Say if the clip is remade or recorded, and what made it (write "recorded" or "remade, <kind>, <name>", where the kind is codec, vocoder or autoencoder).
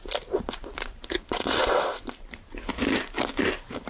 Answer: remade, vocoder, BigVGAN v2